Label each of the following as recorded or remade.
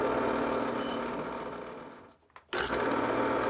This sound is recorded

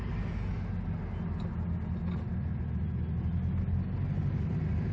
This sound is recorded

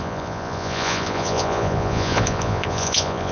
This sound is remade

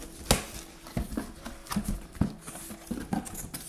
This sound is recorded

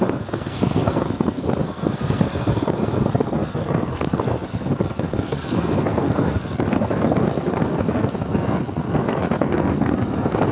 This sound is remade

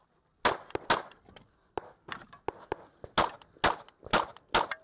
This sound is recorded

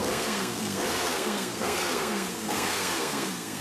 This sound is remade